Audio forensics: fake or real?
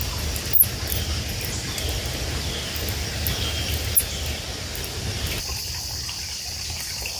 real